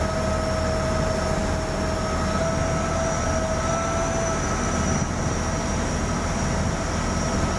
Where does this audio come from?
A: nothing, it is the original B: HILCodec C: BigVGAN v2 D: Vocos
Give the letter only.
A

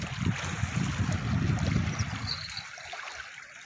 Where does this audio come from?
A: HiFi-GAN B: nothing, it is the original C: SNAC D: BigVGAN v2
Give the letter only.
B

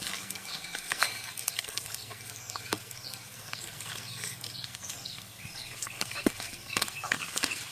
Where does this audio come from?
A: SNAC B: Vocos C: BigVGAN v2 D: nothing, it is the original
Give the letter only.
A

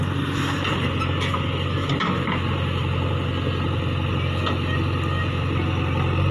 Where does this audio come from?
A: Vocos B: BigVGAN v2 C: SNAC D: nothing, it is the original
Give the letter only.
D